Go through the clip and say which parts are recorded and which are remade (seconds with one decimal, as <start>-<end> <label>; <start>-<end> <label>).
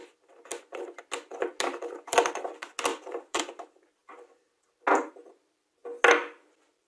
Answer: 0.0-2.9 recorded; 2.9-3.4 remade; 3.4-6.9 recorded